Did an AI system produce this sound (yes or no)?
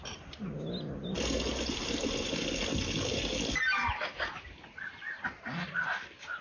no